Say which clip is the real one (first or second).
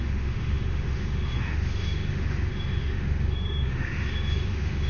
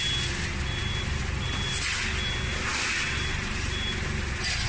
second